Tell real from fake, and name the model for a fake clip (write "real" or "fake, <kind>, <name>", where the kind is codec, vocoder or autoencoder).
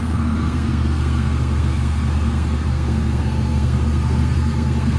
fake, codec, SNAC